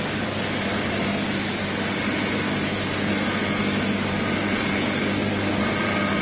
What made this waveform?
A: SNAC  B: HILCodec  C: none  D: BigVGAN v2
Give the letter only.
C